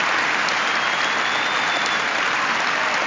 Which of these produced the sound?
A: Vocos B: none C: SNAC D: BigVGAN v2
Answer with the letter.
B